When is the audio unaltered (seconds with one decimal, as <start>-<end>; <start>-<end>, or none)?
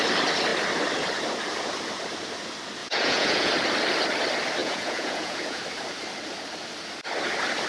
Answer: 0.0-2.8; 3.5-4.6; 5.6-7.7